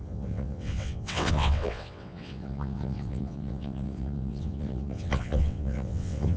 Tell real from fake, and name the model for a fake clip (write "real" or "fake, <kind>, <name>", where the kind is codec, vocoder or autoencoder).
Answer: fake, vocoder, WaveNeXt